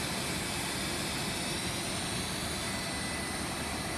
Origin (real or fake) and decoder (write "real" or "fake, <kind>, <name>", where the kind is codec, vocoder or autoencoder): real